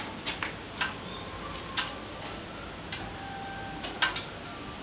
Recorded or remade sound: recorded